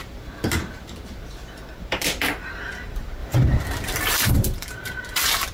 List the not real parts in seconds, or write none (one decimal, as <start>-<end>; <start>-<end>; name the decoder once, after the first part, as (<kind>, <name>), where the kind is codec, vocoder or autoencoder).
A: 0.0-5.5 (vocoder, BigVGAN v2)